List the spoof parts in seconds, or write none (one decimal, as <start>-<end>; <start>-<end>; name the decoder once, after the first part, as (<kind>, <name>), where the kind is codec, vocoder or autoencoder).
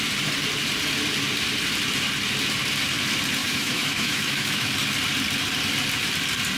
3.4-4.7 (autoencoder, DAC-VAE)